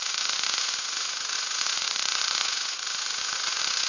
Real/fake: fake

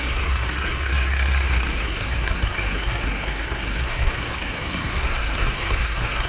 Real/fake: fake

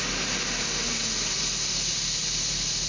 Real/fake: real